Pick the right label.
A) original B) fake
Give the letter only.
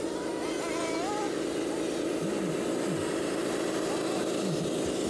A